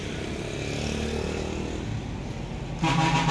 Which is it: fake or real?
real